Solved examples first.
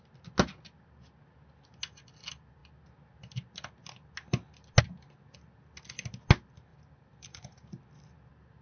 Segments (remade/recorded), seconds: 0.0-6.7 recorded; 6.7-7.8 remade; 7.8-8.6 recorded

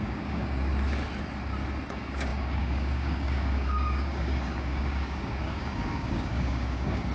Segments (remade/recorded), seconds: 0.0-0.7 remade; 0.7-1.9 recorded; 1.9-7.1 remade

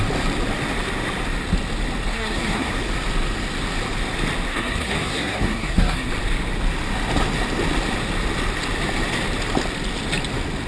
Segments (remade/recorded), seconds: 0.0-2.1 recorded; 2.1-2.7 remade; 2.7-4.5 recorded; 4.5-6.1 remade; 6.1-10.7 recorded

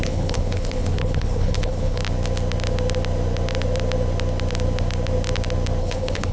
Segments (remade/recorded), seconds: 0.0-2.0 remade; 2.0-5.8 recorded; 5.8-6.3 remade

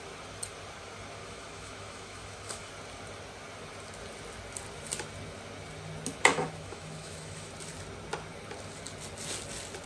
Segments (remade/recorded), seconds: 0.0-1.2 recorded; 1.2-2.7 remade; 2.7-6.3 recorded; 6.3-7.5 remade; 7.5-9.9 recorded